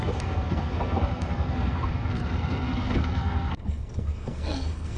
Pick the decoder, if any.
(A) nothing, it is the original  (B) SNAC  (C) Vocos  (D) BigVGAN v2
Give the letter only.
B